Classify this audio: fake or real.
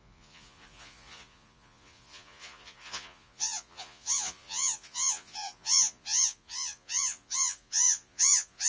fake